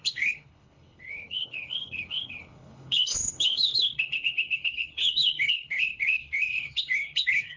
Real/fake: fake